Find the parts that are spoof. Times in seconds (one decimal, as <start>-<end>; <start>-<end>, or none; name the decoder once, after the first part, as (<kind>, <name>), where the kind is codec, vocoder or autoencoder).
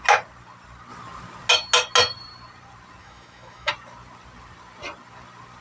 3.0-3.7 (autoencoder, DAC-VAE)